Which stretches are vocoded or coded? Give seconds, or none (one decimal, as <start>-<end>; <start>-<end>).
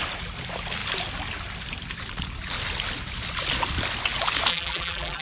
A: 4.5-5.2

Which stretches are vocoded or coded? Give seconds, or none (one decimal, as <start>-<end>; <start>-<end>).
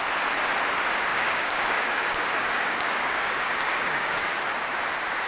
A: 1.1-4.3